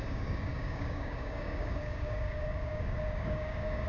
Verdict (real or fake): fake